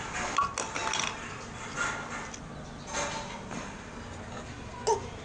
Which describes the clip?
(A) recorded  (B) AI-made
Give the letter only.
A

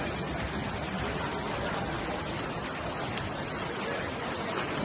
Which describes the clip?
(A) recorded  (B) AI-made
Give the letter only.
A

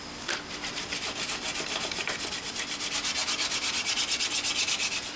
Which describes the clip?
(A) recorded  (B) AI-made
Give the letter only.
A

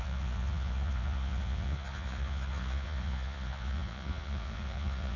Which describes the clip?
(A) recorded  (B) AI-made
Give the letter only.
B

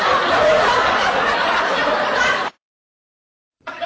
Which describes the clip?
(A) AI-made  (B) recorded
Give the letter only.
A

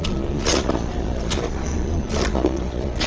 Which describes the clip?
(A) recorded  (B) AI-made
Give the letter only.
B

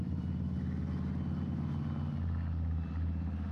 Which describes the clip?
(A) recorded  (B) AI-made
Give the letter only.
A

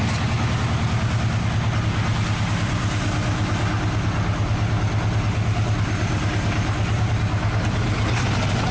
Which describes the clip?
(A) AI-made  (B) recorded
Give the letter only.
B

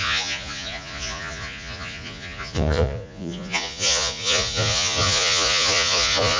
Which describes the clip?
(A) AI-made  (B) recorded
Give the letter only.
A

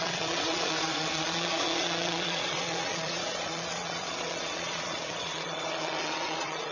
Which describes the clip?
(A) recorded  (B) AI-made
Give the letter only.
B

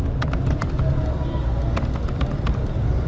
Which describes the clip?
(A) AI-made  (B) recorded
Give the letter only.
B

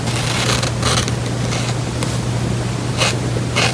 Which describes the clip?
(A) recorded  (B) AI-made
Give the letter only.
A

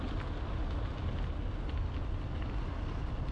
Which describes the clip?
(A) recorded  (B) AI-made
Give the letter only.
A